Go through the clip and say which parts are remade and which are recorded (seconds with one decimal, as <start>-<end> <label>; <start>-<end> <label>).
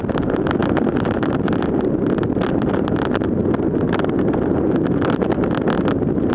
0.0-6.3 recorded